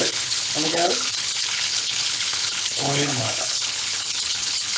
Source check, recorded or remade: remade